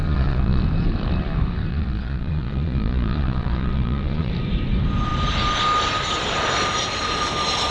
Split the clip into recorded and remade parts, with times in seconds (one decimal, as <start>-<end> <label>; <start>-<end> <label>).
0.0-0.6 remade; 0.6-1.7 recorded; 1.7-4.3 remade; 4.3-7.7 recorded